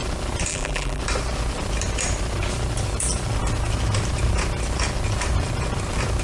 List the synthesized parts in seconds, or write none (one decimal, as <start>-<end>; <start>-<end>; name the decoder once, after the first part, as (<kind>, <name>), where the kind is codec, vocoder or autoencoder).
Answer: 0.5-1.0 (vocoder, BigVGAN v2)